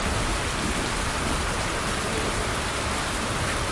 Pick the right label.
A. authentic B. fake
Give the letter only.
A